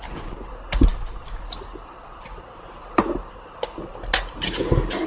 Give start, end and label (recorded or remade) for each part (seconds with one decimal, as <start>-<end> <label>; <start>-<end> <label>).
0.0-0.9 recorded; 0.9-3.0 remade; 3.0-5.1 recorded